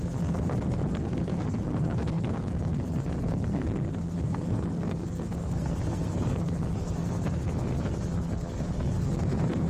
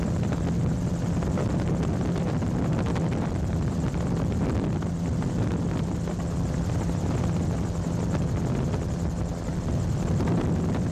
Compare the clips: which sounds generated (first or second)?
first